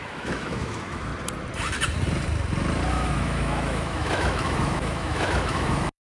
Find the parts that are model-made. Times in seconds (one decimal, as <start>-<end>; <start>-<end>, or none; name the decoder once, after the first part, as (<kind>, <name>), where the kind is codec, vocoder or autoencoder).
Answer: 0.0-1.1 (autoencoder, DAC-VAE); 2.9-6.0